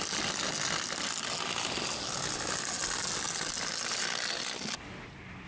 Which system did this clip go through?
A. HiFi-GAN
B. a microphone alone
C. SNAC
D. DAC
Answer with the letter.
B